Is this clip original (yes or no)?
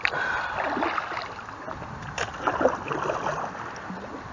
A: yes